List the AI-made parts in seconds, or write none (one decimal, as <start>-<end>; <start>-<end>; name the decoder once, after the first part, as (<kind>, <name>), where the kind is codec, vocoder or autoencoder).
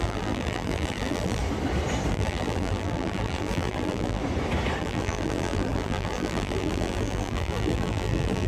0.0-1.4 (vocoder, BigVGAN v2); 2.1-4.2; 4.8-8.5